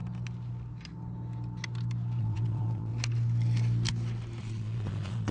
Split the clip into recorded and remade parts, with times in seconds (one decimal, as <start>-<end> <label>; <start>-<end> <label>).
0.0-2.2 recorded; 2.2-2.9 remade; 2.9-4.4 recorded; 4.4-5.3 remade